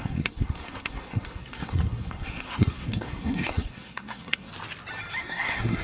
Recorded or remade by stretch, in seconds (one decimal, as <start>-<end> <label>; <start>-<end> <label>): 0.0-4.5 remade; 4.5-5.2 recorded; 5.2-5.8 remade